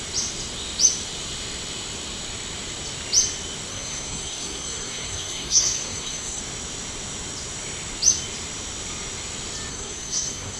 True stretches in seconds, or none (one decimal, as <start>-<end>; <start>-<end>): 0.0-3.7; 6.4-9.7